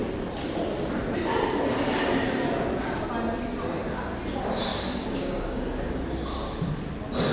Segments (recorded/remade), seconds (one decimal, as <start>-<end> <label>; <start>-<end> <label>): 0.0-4.7 recorded; 4.7-6.0 remade; 6.0-7.3 recorded